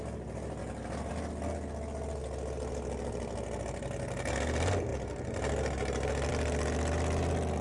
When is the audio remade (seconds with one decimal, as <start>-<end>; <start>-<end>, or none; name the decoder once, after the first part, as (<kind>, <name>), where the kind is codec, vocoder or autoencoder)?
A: none